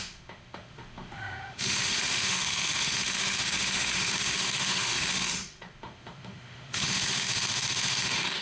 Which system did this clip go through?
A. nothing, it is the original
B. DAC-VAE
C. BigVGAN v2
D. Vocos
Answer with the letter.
B